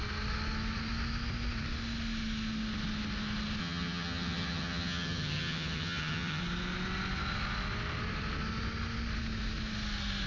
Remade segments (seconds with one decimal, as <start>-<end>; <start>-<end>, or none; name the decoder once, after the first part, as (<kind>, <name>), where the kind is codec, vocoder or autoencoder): 3.6-6.4 (vocoder, HiFi-GAN)